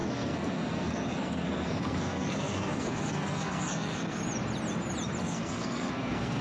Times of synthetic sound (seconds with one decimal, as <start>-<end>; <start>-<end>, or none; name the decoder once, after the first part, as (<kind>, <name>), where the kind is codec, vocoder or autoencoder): 0.0-4.2 (codec, SNAC); 5.2-6.4